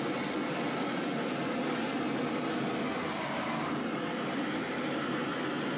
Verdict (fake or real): real